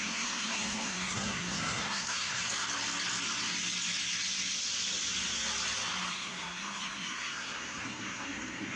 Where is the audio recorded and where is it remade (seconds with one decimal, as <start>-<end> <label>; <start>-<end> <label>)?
0.0-2.4 remade; 2.4-6.1 recorded; 6.1-8.8 remade